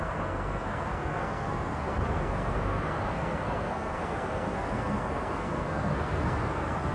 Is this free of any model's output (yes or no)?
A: no